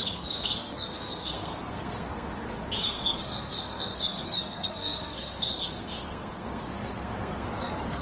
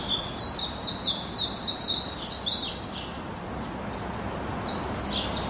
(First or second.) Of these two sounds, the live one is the second